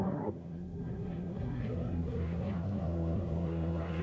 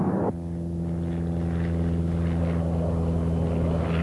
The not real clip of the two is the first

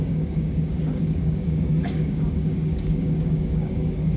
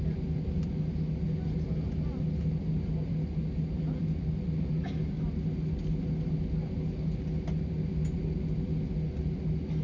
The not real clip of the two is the first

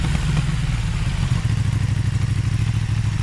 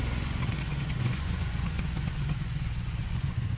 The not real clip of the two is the second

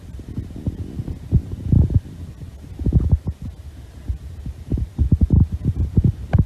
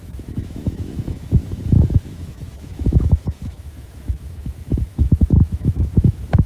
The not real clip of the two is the second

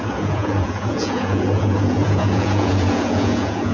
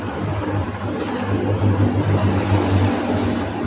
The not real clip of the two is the first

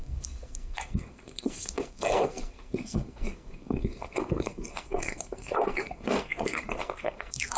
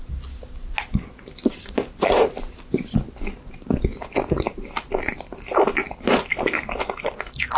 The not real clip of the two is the first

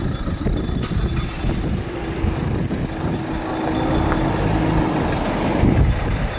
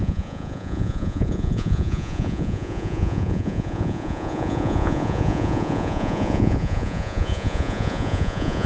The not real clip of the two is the second